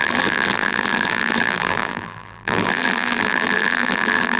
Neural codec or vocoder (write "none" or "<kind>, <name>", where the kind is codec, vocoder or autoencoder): vocoder, BigVGAN v2